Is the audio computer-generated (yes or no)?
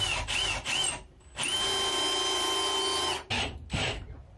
no